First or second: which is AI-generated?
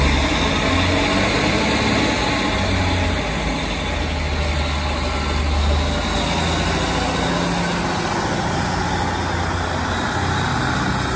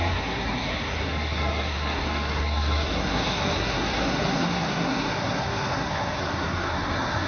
second